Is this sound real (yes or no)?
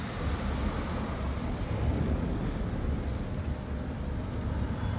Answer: yes